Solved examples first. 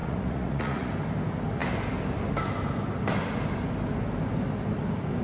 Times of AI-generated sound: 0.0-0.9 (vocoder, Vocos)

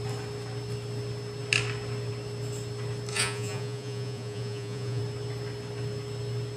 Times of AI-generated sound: 3.1-5.0 (vocoder, Vocos)

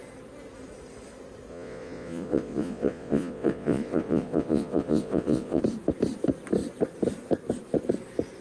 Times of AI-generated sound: 1.5-5.6 (vocoder, Vocos)